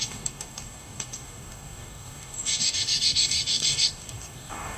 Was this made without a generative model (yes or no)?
no